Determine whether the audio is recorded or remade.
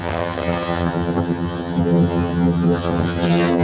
remade